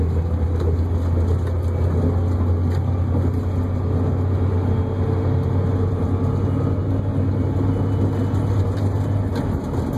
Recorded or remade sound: recorded